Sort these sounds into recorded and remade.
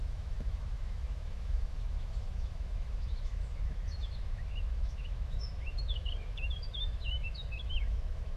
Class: remade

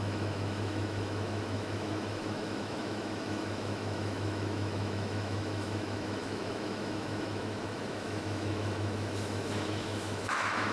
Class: remade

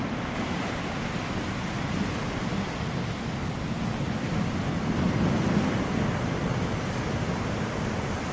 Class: recorded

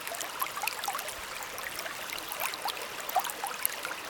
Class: recorded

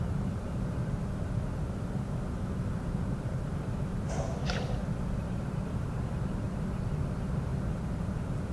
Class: recorded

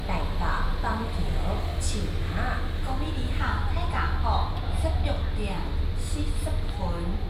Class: recorded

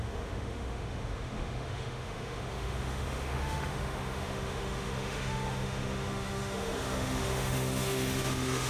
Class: remade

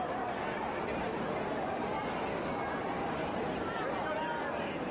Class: recorded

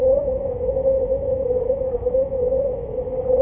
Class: remade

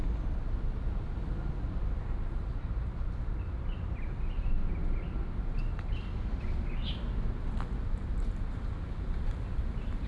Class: recorded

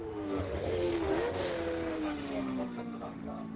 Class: remade